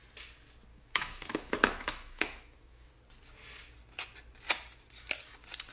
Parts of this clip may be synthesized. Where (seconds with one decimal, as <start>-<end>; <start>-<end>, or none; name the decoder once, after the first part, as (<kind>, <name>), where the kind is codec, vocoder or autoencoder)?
0.7-2.9 (autoencoder, DAC-VAE)